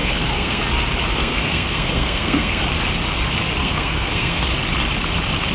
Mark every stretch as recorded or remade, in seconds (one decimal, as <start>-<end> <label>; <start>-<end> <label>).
0.0-0.6 remade; 0.6-1.1 recorded; 1.1-2.6 remade; 2.6-3.6 recorded; 3.6-4.4 remade; 4.4-5.5 recorded